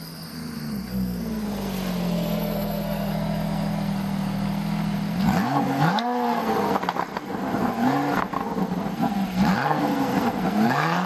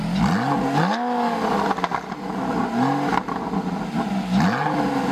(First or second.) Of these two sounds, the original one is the second